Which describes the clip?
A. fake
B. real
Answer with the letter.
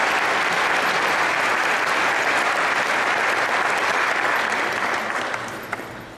B